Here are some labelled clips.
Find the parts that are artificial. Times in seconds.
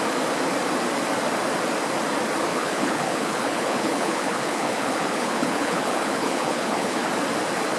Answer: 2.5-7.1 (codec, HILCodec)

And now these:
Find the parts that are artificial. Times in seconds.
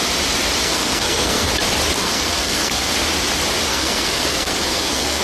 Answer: 0.6-1.5 (codec, SNAC); 2.0-2.9; 3.7-5.2